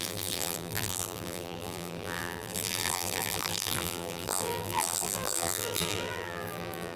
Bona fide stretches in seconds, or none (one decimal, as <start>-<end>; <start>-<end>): none